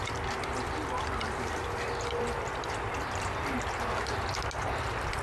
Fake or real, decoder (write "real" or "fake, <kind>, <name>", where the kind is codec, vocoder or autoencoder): real